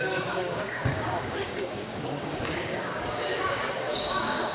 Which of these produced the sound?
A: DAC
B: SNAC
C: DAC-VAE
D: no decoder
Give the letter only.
A